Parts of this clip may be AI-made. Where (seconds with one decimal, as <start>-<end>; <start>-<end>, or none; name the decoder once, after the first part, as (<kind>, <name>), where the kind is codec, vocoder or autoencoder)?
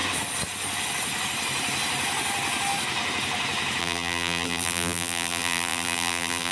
3.8-6.5 (vocoder, BigVGAN v2)